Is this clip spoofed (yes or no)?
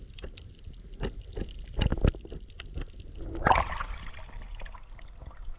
no